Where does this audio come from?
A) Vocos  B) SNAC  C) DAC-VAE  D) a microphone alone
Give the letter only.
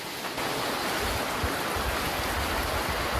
D